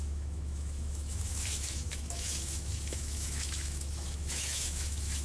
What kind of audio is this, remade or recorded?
remade